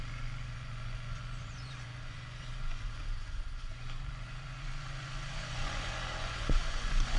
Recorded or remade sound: remade